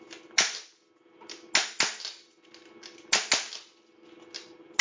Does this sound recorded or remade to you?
recorded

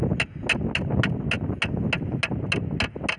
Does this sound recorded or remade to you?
recorded